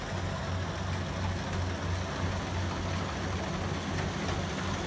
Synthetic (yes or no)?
no